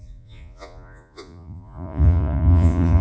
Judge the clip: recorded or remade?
remade